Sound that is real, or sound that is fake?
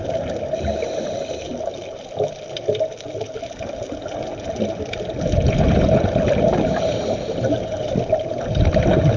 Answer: real